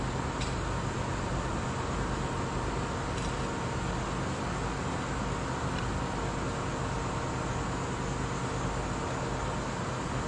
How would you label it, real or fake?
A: real